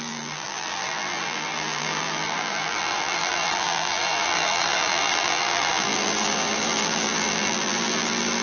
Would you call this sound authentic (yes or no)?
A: no